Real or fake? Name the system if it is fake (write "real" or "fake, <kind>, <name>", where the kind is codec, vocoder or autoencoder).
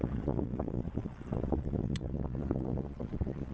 fake, vocoder, Vocos